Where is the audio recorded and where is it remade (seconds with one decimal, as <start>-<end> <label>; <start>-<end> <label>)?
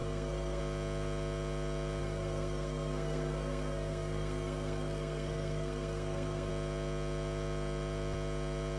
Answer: 0.0-0.6 remade; 0.6-2.0 recorded; 2.0-6.5 remade; 6.5-8.8 recorded